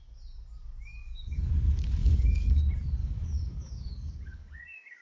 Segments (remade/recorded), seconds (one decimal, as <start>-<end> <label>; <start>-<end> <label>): 0.0-0.9 recorded; 0.9-1.4 remade; 1.4-2.0 recorded; 2.0-2.6 remade; 2.6-3.0 recorded; 3.0-5.0 remade